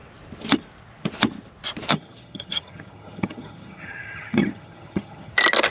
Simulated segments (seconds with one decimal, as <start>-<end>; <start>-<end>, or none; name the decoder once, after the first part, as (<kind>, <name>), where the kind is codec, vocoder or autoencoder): 1.9-5.3 (vocoder, HiFi-GAN)